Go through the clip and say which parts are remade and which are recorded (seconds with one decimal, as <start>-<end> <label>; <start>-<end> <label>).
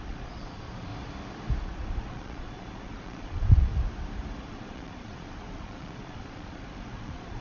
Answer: 0.0-0.9 remade; 0.9-1.6 recorded; 1.6-3.7 remade; 3.7-4.5 recorded; 4.5-7.4 remade